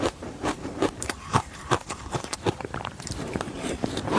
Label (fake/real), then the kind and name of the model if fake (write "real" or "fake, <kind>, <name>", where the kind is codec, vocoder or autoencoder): fake, vocoder, BigVGAN v2